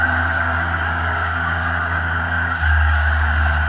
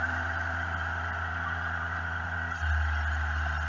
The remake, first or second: first